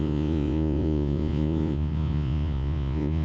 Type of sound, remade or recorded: remade